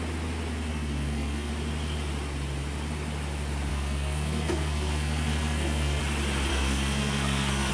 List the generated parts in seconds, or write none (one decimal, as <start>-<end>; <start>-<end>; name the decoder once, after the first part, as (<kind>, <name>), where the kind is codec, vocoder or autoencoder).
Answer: 0.7-1.5 (codec, SNAC); 3.7-6.0; 6.5-7.7